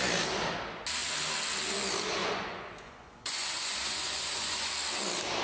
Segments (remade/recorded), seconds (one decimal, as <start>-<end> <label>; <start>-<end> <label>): 0.0-2.2 recorded; 2.2-4.7 remade; 4.7-5.4 recorded